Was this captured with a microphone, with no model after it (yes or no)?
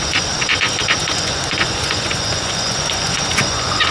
no